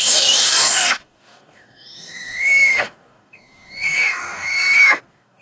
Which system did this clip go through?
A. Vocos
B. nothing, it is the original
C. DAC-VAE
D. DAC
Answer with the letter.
D